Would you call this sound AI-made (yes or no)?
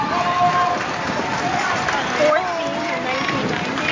no